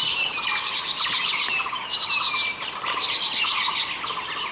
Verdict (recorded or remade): recorded